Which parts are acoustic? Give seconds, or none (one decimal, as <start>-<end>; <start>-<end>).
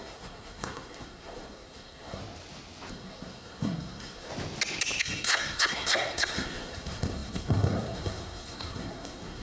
2.2-2.9; 4.3-5.0